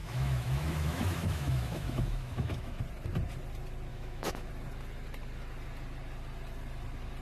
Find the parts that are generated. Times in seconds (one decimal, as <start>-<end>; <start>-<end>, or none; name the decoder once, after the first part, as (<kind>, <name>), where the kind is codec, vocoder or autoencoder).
0.0-2.8 (autoencoder, DAC-VAE); 3.9-4.5